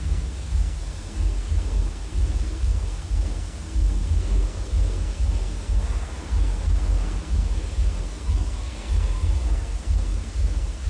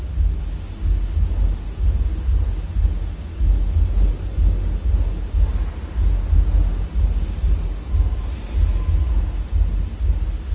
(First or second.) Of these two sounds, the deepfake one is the first